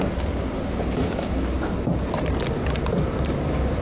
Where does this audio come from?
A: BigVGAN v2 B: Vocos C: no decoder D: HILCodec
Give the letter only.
A